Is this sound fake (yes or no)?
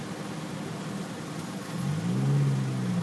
no